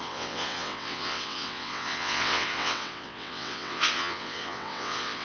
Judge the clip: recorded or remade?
remade